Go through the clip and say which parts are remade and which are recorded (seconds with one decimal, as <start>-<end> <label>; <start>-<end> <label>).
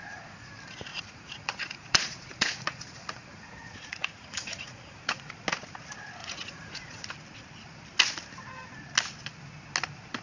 0.0-0.5 remade; 0.5-0.9 recorded; 0.9-5.3 remade; 5.3-6.2 recorded; 6.2-7.1 remade; 7.1-10.2 recorded